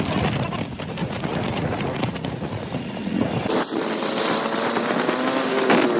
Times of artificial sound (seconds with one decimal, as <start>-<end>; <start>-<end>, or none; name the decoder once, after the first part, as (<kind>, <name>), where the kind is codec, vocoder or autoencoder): 1.0-3.3 (vocoder, Vocos)